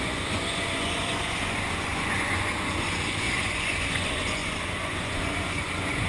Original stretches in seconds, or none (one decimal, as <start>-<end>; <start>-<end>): none